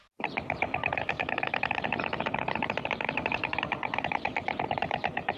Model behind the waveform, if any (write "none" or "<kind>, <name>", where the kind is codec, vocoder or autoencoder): vocoder, BigVGAN v2